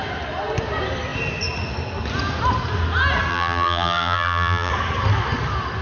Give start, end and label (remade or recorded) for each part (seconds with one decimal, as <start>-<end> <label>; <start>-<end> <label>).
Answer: 0.0-3.3 recorded; 3.3-4.7 remade; 4.7-5.8 recorded